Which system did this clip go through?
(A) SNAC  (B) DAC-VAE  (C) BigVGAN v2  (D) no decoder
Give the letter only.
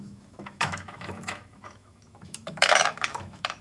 B